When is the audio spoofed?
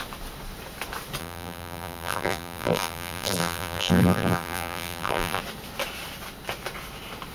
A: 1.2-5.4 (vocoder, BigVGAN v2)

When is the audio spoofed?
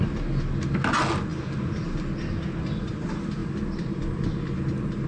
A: none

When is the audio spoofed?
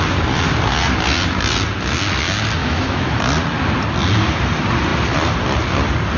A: 2.6-3.2 (autoencoder, DAC-VAE)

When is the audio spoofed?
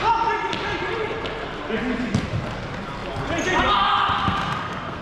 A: 4.2-5.0 (codec, SNAC)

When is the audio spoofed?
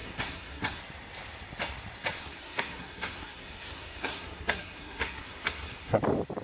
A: 0.0-0.8 (codec, SNAC); 2.2-6.0